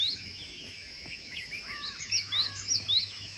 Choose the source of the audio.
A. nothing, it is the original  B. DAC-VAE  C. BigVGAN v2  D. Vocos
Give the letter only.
B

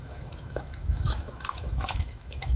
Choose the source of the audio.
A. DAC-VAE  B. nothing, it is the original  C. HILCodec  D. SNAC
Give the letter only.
A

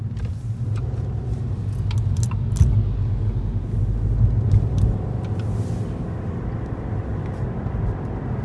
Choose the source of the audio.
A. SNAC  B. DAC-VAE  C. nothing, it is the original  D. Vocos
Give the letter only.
C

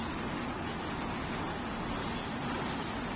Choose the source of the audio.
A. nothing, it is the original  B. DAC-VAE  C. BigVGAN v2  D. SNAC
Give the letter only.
A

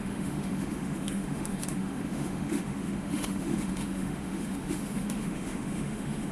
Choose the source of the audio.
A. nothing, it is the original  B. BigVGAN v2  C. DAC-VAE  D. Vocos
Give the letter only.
C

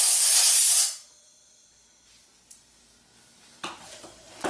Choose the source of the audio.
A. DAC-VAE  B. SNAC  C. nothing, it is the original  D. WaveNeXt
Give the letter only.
C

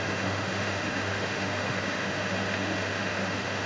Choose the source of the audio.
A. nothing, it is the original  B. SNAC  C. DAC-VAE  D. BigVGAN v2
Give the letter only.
C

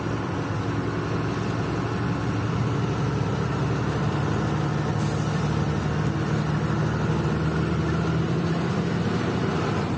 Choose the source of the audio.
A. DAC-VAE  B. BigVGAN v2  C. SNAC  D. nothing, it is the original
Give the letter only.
D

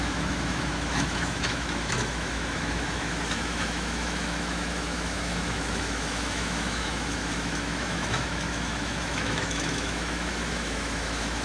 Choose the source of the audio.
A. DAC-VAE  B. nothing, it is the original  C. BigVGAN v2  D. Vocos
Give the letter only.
A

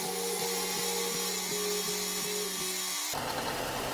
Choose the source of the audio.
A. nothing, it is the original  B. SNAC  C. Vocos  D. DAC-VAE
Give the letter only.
A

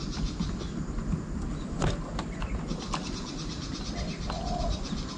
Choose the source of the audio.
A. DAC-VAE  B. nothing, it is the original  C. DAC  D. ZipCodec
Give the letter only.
B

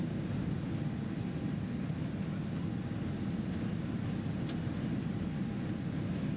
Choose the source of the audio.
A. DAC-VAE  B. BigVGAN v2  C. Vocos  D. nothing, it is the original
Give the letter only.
D